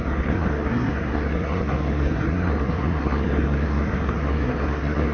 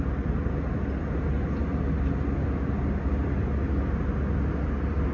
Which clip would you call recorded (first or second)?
second